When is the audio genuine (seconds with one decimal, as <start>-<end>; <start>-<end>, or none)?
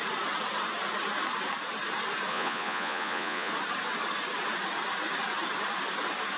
0.0-2.3; 3.5-6.4